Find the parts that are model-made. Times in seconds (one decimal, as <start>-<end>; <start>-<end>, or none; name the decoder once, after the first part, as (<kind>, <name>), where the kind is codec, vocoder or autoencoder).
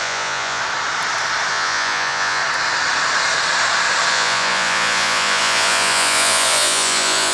0.0-0.6 (vocoder, Vocos); 1.5-2.4; 4.1-7.3